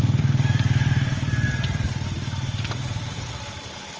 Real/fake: fake